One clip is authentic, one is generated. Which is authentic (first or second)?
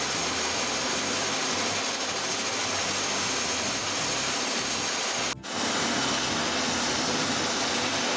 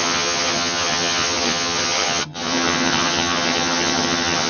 first